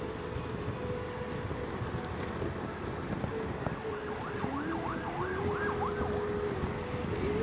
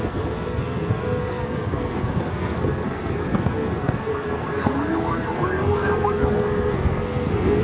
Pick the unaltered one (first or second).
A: first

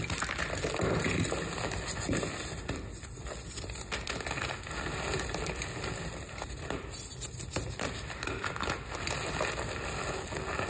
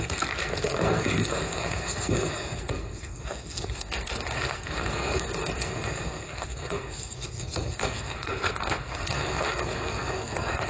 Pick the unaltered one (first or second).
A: first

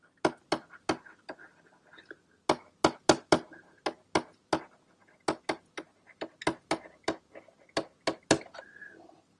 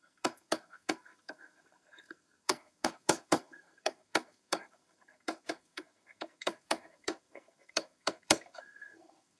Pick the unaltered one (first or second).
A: first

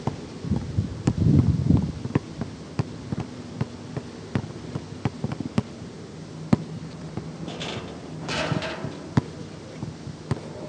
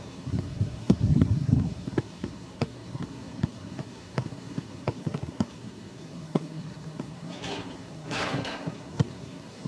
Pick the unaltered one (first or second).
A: first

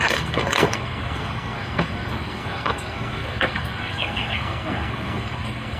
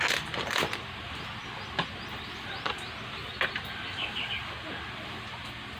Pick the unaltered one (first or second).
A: second